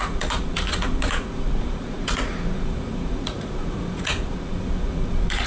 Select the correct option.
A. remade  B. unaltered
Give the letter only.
A